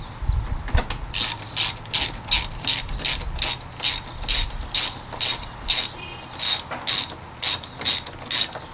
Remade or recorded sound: recorded